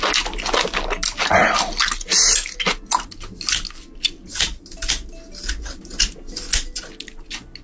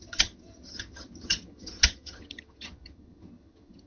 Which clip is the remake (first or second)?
second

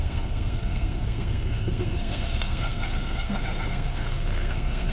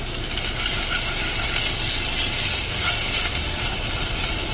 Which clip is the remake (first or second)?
first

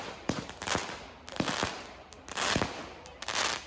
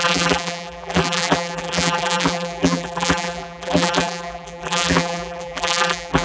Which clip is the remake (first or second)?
second